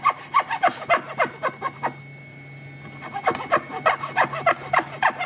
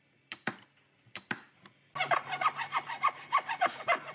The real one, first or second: first